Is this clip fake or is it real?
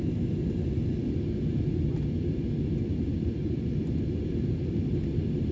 real